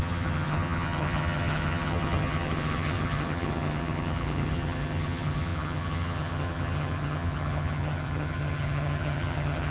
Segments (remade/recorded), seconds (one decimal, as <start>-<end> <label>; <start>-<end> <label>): 0.0-9.7 remade